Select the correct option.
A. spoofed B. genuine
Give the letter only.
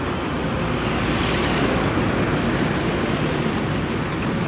B